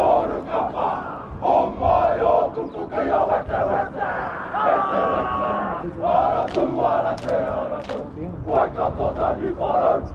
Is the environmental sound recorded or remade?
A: recorded